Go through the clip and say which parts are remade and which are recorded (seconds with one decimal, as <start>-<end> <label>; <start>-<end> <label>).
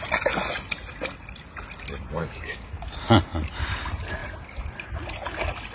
0.0-2.2 recorded; 2.2-2.7 remade; 2.7-5.7 recorded